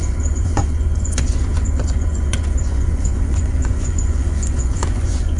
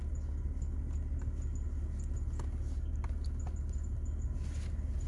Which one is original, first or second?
second